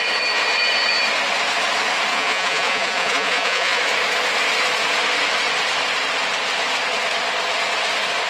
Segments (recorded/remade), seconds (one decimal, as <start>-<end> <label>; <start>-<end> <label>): 0.0-2.1 recorded; 2.1-3.8 remade; 3.8-8.3 recorded